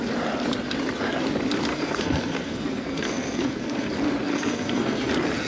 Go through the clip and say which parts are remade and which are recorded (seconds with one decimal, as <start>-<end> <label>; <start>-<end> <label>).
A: 0.0-1.7 recorded; 1.7-3.9 remade; 3.9-4.3 recorded; 4.3-5.1 remade; 5.1-5.5 recorded